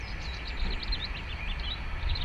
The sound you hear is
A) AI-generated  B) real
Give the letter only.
B